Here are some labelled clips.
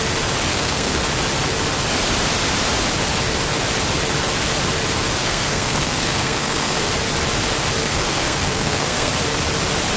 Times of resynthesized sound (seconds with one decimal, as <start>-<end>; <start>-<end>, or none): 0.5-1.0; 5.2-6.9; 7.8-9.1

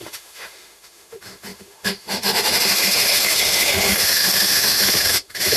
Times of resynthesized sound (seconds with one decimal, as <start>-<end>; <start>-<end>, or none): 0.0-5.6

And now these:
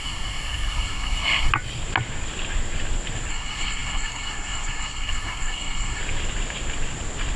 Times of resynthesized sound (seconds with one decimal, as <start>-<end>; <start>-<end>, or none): 0.0-1.5; 3.3-6.0